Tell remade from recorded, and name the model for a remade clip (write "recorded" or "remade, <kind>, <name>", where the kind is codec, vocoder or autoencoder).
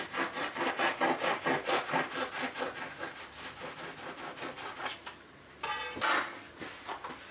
recorded